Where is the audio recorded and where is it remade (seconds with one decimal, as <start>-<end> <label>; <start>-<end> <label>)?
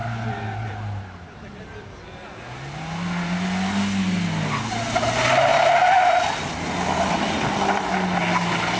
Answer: 0.0-8.8 recorded